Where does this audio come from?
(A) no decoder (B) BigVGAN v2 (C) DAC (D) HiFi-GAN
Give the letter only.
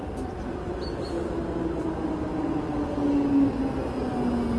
A